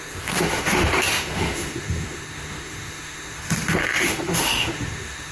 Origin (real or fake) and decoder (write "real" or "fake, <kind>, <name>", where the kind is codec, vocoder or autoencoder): fake, autoencoder, DAC-VAE